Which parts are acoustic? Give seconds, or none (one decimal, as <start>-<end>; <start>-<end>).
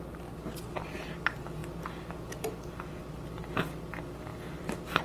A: 0.0-5.0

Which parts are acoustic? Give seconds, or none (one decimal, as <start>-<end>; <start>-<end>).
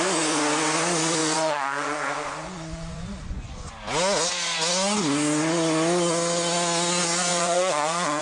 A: 0.0-1.2; 3.7-7.3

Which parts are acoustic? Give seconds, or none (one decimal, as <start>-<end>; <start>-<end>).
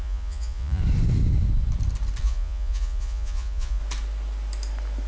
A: 0.8-2.2; 3.8-5.1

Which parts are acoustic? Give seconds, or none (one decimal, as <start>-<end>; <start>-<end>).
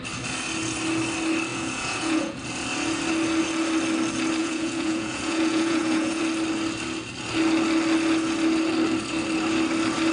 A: 0.0-1.5; 2.4-4.4; 6.2-10.1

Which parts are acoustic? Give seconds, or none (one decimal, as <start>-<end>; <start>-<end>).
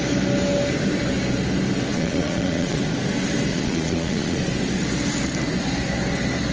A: 0.0-1.9; 2.8-3.5; 4.4-6.5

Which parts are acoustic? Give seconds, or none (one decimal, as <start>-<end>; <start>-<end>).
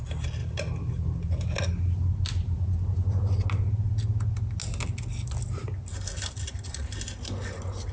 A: 0.0-7.9